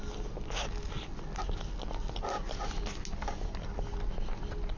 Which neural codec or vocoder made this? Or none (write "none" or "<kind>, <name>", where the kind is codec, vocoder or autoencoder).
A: none